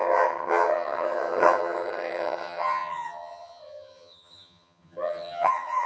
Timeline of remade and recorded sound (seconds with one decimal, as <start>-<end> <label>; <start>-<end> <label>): 0.0-5.9 remade